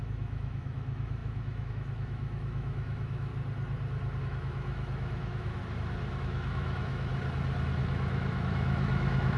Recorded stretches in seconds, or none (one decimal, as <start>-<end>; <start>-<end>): 3.3-4.2; 5.6-6.2; 7.1-7.8